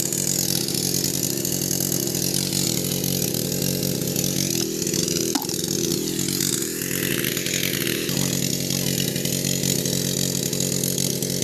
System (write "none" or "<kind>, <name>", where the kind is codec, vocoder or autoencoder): none